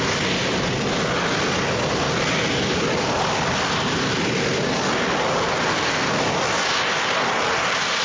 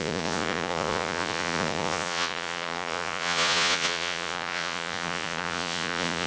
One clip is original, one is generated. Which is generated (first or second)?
second